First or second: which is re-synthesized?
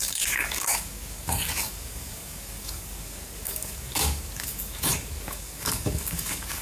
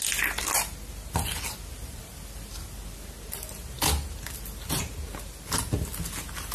first